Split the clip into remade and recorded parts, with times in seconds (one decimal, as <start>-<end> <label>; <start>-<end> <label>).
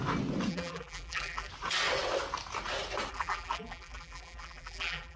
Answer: 0.0-0.5 recorded; 0.5-1.5 remade; 1.5-3.1 recorded; 3.1-5.2 remade